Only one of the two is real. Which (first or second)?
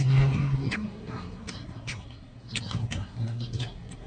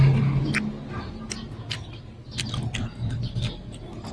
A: second